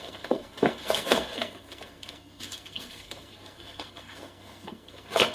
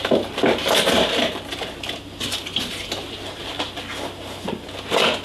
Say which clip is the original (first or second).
second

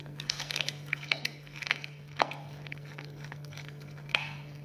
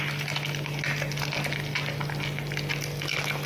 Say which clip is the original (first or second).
second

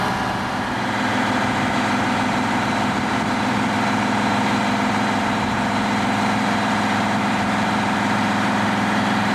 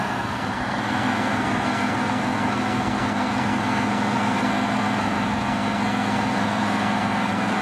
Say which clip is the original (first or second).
first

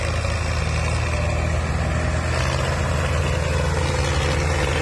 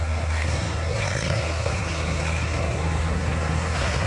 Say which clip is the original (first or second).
first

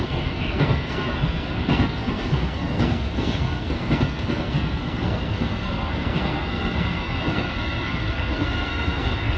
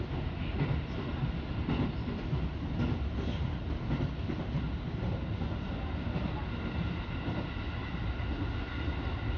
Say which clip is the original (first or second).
second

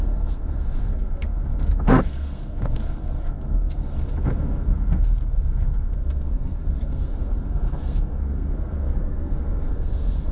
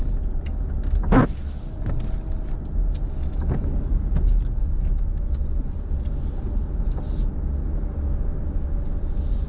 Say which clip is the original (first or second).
second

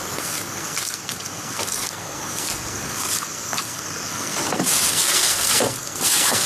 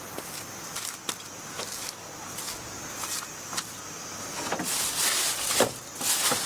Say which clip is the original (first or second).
second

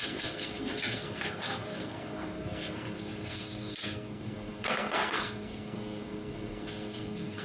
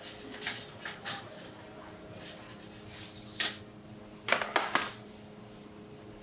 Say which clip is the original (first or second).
second